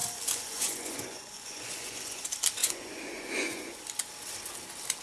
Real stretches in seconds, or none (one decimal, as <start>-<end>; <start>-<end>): 2.2-2.6; 3.8-5.0